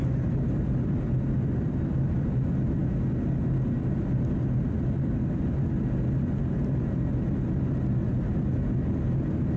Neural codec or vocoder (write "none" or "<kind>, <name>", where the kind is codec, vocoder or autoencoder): none